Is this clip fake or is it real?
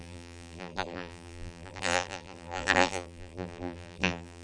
fake